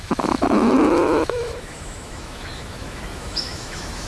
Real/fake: fake